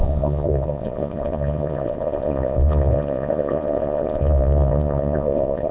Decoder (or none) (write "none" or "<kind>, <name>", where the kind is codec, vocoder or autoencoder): vocoder, Vocos